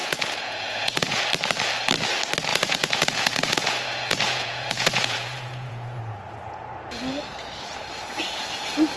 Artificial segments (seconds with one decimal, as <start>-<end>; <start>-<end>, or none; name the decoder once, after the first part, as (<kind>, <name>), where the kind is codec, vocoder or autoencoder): 0.0-1.2 (vocoder, Vocos); 2.5-6.0